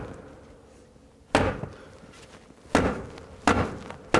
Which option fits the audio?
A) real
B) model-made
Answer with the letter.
A